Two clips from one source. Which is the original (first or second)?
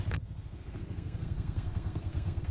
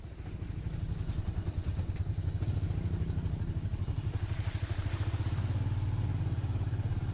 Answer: second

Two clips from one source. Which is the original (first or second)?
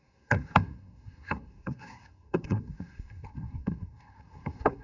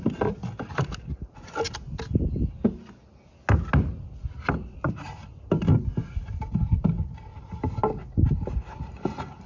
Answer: second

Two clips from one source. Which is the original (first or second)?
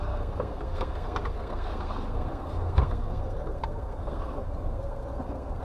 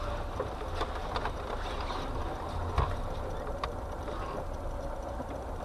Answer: second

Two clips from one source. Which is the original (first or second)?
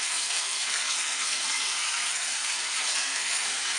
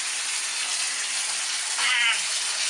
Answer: second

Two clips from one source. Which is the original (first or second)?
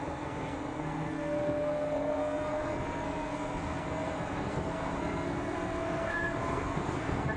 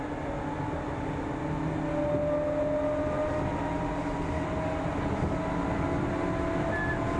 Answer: second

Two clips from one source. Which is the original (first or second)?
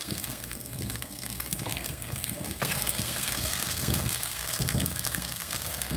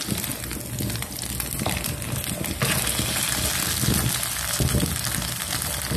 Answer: second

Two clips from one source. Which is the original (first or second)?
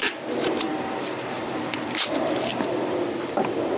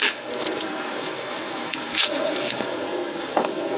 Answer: first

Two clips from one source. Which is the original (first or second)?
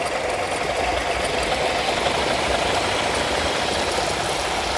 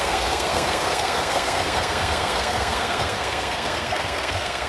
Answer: first